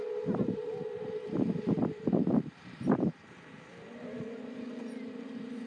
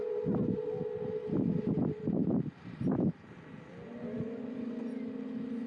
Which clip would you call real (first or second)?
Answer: second